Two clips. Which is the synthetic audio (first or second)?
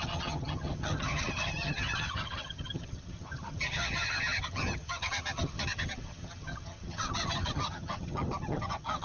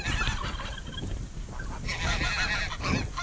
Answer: first